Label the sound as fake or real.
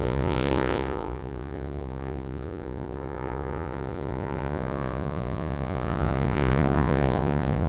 fake